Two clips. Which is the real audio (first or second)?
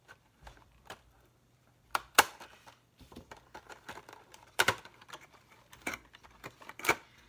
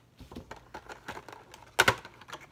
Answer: second